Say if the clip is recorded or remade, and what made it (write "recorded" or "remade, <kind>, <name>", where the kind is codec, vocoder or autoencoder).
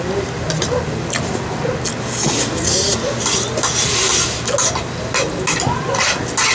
recorded